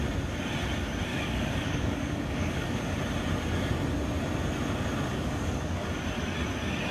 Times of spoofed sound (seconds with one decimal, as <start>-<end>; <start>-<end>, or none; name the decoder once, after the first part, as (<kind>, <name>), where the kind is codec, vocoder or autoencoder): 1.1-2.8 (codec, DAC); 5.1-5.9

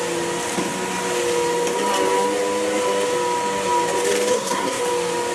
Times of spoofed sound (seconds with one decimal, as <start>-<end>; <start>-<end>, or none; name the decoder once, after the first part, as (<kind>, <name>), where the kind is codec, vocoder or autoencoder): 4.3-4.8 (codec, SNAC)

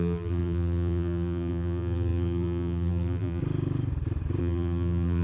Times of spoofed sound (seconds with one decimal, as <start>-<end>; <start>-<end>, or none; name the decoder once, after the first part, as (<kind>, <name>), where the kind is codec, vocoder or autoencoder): 0.0-3.4 (vocoder, BigVGAN v2); 4.4-5.2

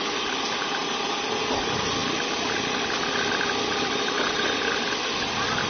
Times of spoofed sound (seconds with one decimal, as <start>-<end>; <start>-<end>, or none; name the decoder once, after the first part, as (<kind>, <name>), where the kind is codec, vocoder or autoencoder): none

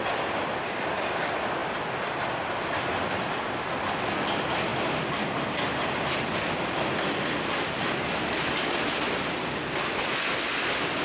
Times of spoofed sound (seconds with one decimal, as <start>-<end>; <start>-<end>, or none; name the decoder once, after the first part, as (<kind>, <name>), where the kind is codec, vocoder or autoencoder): 1.6-2.7 (vocoder, BigVGAN v2)

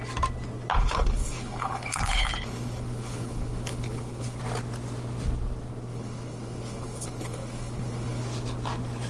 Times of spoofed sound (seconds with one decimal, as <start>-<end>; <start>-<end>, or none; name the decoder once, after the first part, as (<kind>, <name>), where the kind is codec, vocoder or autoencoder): 0.7-4.4 (codec, HILCodec); 5.9-8.2

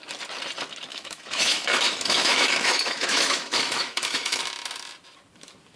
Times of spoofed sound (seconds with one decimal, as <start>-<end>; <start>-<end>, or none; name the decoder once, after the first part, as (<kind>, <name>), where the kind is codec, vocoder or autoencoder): 0.9-4.4 (autoencoder, DAC-VAE)